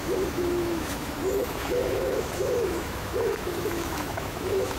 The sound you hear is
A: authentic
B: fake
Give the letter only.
B